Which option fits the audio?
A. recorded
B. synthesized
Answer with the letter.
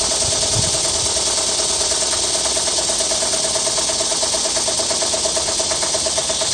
A